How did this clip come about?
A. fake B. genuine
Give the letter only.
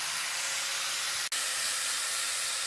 B